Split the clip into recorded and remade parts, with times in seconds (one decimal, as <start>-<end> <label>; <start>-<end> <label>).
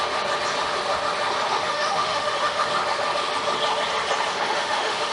0.0-1.5 recorded; 1.5-2.7 remade; 2.7-4.3 recorded; 4.3-5.1 remade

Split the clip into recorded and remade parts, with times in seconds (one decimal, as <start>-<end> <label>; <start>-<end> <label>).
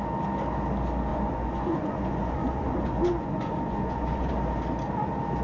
0.0-1.1 recorded; 1.1-4.3 remade; 4.3-5.4 recorded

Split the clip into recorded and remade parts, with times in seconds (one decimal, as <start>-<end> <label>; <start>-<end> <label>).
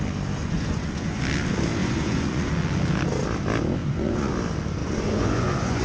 0.0-0.4 recorded; 0.4-1.2 remade; 1.2-1.8 recorded; 1.8-2.5 remade; 2.5-3.8 recorded; 3.8-4.3 remade; 4.3-4.8 recorded; 4.8-5.8 remade